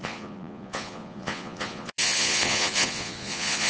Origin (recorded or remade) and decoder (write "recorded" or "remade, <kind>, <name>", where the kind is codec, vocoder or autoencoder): remade, vocoder, Vocos